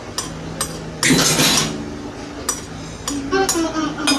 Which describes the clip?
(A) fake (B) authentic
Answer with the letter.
B